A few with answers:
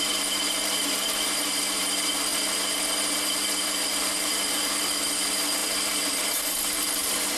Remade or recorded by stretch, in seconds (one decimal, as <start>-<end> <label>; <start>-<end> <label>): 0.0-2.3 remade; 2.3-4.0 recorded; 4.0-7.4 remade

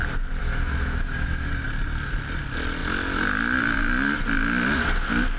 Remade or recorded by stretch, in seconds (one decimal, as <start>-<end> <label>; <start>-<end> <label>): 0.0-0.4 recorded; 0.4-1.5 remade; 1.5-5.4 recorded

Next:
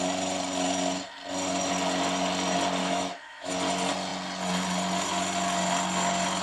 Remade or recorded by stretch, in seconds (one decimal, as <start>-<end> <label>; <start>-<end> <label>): 0.0-2.8 recorded; 2.8-3.5 remade; 3.5-6.4 recorded